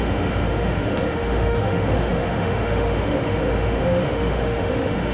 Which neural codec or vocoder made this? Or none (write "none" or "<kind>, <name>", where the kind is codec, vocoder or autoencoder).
autoencoder, DAC-VAE